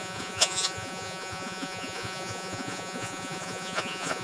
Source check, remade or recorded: remade